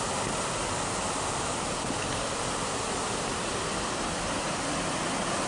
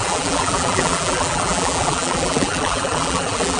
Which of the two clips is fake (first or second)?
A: second